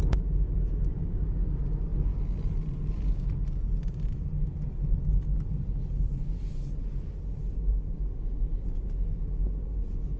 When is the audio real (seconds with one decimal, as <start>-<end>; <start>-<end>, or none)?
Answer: 0.0-10.2